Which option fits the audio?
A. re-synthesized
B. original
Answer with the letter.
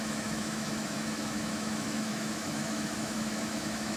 A